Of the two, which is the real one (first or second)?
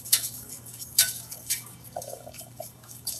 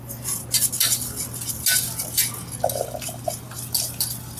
second